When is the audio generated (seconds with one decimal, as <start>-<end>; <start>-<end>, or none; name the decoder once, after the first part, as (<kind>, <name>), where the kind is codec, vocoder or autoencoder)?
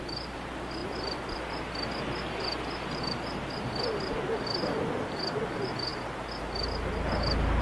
none